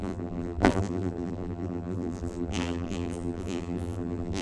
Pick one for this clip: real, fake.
fake